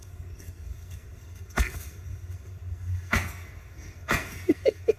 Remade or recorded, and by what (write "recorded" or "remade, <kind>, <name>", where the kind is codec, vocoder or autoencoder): remade, codec, SNAC